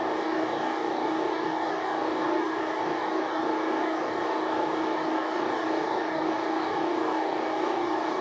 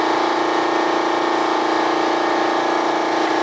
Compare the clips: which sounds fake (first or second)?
first